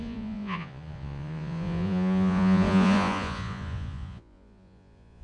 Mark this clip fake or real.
fake